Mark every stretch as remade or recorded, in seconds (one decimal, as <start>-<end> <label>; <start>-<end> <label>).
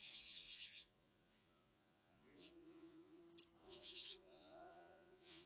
0.0-3.2 remade; 3.2-3.6 recorded; 3.6-5.5 remade